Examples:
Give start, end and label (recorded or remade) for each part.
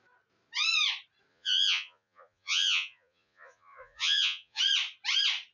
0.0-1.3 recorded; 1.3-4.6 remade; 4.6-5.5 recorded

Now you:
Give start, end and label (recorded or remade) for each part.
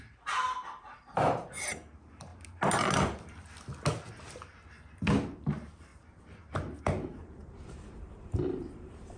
0.0-2.3 remade; 2.3-5.4 recorded; 5.4-5.9 remade; 5.9-6.8 recorded; 6.8-9.2 remade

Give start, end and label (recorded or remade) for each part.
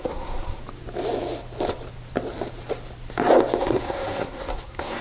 0.0-0.6 remade; 0.6-3.6 recorded; 3.6-5.0 remade